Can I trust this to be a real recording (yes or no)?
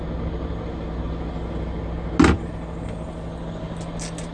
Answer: yes